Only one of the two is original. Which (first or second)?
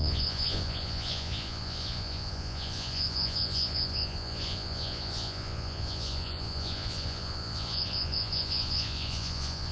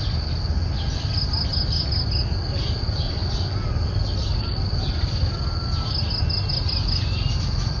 second